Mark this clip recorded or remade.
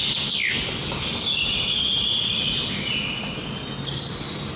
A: recorded